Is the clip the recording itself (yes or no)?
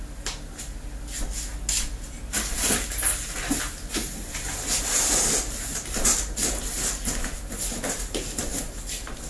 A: yes